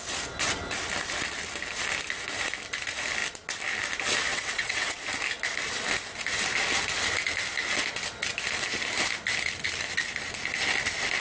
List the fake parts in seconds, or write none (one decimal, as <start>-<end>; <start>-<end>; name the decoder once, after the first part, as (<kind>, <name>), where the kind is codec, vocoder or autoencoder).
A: 4.3-5.0 (vocoder, WaveNeXt)